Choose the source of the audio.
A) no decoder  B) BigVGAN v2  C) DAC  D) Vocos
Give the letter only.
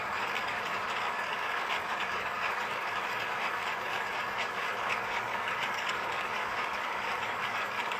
C